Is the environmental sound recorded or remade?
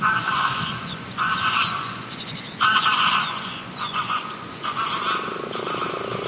remade